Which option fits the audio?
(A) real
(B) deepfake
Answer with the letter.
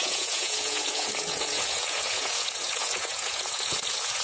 B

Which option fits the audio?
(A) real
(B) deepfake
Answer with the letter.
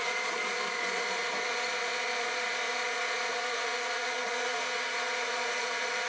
B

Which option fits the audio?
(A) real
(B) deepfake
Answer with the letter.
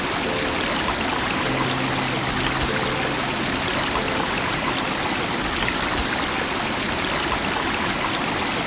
A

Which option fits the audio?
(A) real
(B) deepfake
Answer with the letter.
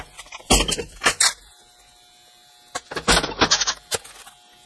A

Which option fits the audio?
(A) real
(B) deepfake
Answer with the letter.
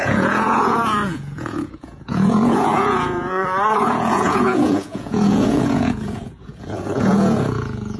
B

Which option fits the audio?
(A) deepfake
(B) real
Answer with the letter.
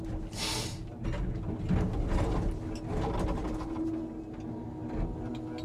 B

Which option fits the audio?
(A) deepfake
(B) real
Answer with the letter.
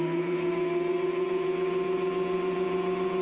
A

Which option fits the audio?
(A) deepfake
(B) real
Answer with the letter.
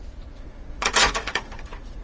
A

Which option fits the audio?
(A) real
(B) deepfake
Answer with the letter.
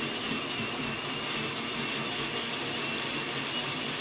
A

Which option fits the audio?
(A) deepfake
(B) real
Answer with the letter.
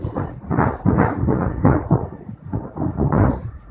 A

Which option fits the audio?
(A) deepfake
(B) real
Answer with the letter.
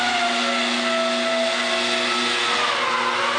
B